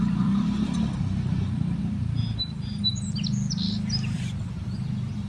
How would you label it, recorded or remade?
recorded